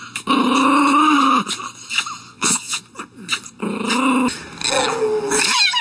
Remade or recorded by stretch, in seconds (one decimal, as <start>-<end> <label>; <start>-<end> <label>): 0.0-2.3 recorded; 2.3-2.8 remade; 2.8-5.8 recorded